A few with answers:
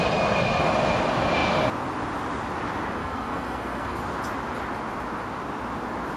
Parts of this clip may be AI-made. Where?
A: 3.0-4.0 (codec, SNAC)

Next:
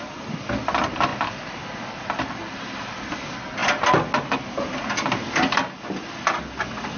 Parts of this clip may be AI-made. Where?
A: none

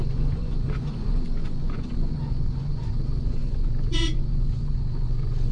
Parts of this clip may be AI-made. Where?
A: 0.0-5.5 (vocoder, Vocos)

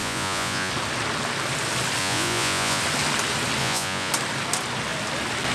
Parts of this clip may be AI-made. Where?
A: 0.0-0.7 (vocoder, Vocos); 2.0-2.8; 3.6-4.1